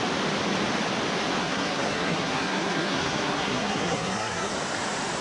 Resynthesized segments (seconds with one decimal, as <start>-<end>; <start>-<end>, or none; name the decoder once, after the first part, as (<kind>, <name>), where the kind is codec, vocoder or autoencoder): 1.4-4.5 (codec, SNAC)